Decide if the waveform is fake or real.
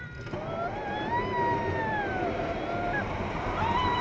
real